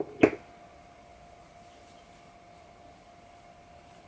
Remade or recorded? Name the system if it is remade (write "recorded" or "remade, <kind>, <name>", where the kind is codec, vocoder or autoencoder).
recorded